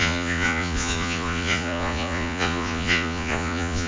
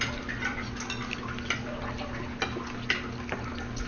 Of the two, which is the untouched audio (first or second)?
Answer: second